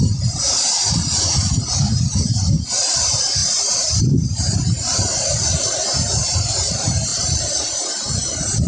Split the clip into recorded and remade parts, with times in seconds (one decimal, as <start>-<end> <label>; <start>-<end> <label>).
0.0-3.4 remade; 3.4-4.0 recorded; 4.0-8.7 remade